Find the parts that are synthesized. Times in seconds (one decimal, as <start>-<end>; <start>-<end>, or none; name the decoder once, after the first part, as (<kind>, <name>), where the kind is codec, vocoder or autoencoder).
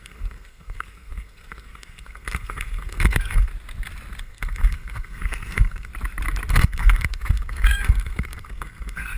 0.0-3.5 (codec, SNAC); 4.2-5.9; 6.5-9.2